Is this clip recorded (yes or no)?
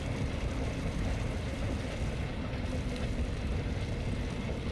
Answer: yes